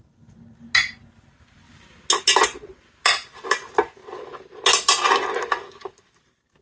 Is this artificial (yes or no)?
no